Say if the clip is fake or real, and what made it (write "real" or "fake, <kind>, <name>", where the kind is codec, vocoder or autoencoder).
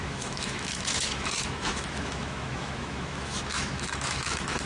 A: fake, autoencoder, DAC-VAE